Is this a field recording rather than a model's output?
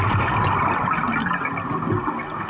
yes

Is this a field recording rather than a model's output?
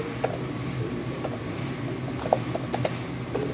yes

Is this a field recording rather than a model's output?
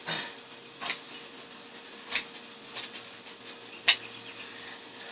yes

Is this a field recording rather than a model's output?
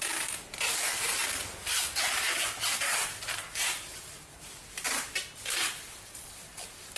no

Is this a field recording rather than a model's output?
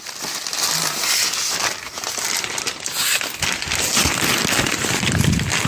yes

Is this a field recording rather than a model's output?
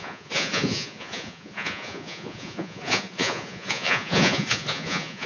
no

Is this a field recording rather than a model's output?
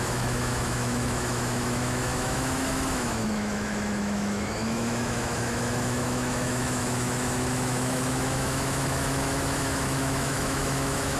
no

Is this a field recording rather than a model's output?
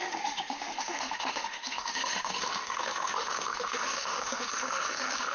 no